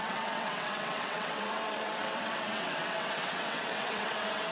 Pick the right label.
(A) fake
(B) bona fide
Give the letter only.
A